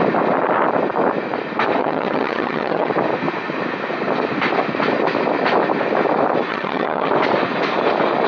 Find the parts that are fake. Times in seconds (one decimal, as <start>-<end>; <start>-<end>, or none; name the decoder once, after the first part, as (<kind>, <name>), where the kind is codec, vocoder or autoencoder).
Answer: 1.8-2.9 (vocoder, HiFi-GAN); 6.5-7.1